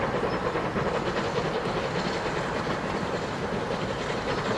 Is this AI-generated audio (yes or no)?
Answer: no